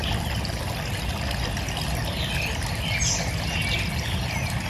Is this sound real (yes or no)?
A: yes